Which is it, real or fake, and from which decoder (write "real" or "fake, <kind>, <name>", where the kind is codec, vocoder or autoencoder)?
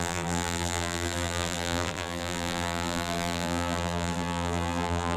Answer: fake, vocoder, BigVGAN v2